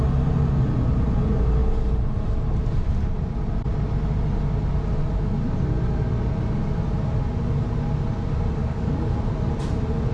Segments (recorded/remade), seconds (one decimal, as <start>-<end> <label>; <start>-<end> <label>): 0.0-8.6 recorded; 8.6-9.1 remade; 9.1-10.1 recorded